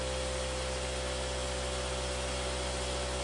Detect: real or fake real